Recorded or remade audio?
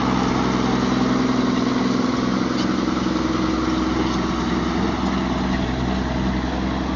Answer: recorded